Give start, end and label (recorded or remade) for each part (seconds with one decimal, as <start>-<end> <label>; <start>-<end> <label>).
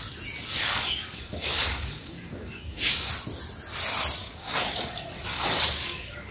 0.0-0.5 recorded; 0.5-3.1 remade; 3.1-4.2 recorded; 4.2-6.3 remade